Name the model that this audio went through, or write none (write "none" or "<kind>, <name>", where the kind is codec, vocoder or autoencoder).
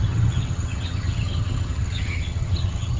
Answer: vocoder, HiFi-GAN